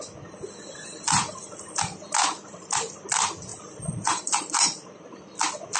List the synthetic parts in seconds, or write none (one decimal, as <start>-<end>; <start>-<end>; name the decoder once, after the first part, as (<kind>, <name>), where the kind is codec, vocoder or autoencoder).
3.5-5.3 (vocoder, BigVGAN v2)